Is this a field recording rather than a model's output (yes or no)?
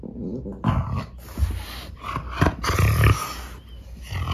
yes